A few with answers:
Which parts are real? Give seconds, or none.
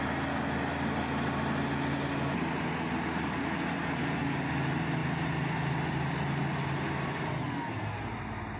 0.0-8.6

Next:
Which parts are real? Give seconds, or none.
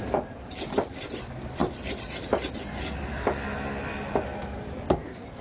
0.0-5.4